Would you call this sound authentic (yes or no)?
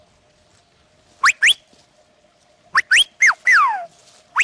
yes